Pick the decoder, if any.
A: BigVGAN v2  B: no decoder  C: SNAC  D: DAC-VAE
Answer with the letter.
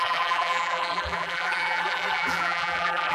A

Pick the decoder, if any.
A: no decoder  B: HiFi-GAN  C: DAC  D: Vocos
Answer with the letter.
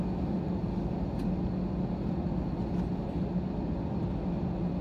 A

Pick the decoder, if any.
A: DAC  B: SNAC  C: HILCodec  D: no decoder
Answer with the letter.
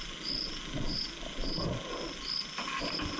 D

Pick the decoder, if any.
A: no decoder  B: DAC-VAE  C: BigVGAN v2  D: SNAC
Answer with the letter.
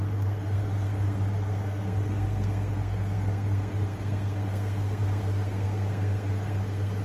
D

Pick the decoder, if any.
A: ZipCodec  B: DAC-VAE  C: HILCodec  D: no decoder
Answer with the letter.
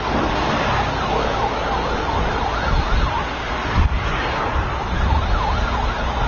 D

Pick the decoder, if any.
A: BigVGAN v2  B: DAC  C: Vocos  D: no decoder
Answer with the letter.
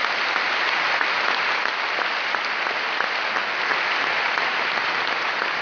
D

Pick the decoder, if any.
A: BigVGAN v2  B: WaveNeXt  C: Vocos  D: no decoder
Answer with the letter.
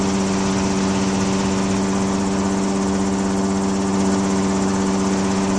D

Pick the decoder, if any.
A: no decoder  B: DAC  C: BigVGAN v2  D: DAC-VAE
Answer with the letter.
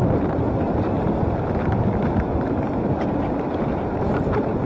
A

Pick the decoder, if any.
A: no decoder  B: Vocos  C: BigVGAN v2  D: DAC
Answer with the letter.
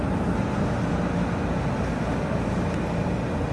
A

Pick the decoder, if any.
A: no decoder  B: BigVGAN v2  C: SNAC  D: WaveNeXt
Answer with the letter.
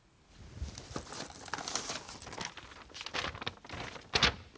A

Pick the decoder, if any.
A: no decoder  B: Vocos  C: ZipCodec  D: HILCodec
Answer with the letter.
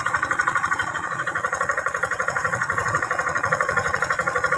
B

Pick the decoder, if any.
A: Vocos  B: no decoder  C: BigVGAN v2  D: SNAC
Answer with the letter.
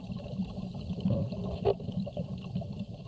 C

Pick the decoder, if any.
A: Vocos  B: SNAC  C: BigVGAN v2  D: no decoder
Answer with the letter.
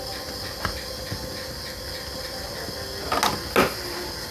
D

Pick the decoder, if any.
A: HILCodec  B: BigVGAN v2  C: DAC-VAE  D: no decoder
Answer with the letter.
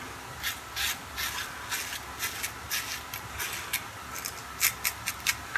D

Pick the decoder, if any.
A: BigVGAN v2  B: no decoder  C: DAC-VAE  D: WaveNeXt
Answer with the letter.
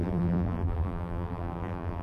A